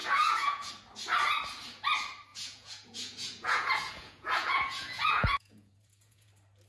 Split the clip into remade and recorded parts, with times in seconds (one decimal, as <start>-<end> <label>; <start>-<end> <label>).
0.0-0.7 remade; 0.7-2.3 recorded; 2.3-6.3 remade; 6.3-6.7 recorded